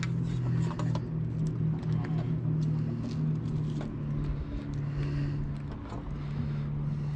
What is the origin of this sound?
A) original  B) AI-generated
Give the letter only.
A